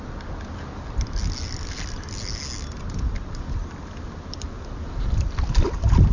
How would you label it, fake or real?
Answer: real